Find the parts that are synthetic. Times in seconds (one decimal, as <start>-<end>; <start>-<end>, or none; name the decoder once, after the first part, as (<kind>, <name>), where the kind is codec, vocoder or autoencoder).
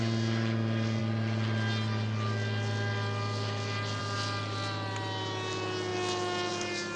none